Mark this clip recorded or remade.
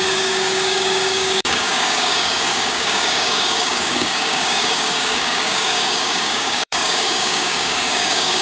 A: remade